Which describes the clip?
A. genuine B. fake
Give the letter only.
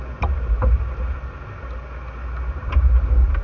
A